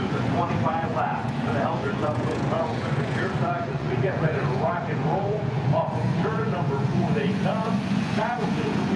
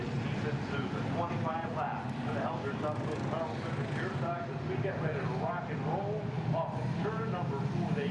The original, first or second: second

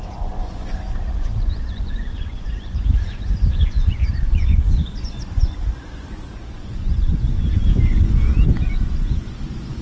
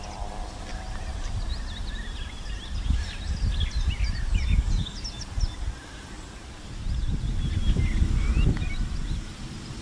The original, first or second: second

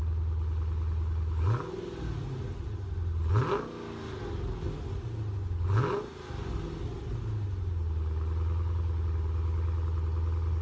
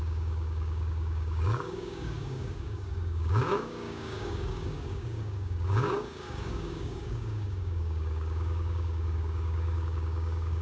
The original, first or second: first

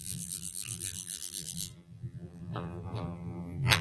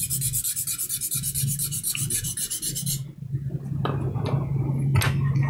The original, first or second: second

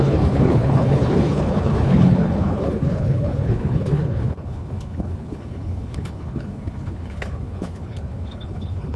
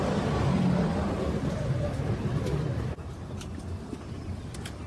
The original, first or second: second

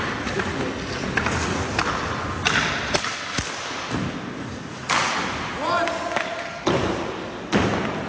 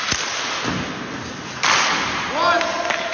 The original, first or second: second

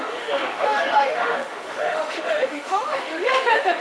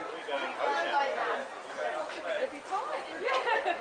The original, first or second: second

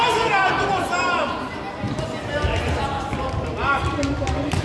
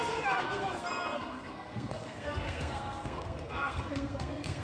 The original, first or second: first